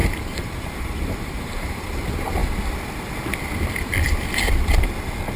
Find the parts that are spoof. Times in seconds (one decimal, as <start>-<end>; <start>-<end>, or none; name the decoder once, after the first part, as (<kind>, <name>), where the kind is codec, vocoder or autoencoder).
0.0-2.0 (vocoder, BigVGAN v2)